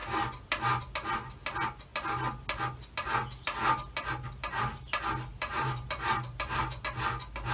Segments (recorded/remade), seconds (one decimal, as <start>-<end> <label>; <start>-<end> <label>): 0.0-5.3 recorded; 5.3-6.6 remade; 6.6-7.5 recorded